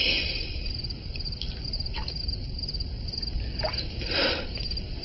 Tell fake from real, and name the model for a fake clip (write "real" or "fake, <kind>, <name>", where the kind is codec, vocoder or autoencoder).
fake, vocoder, BigVGAN v2